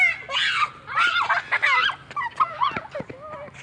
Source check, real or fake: real